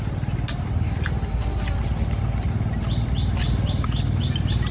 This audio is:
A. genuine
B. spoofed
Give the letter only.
A